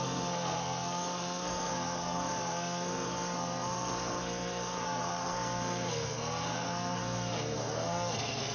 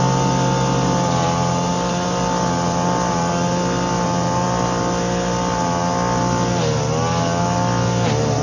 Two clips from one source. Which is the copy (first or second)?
first